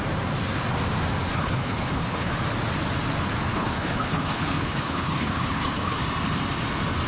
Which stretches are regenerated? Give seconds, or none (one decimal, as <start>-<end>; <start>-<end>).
1.3-2.3; 3.5-6.0